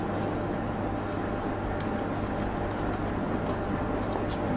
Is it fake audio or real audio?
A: real